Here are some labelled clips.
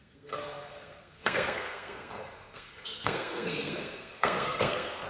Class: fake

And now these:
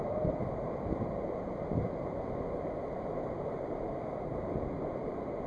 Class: fake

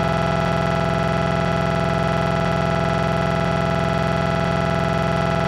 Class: real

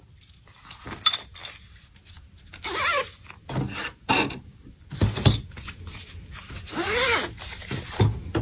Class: real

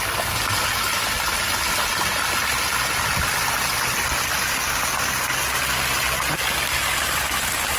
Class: real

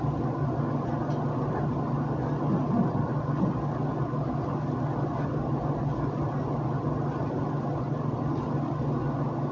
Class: real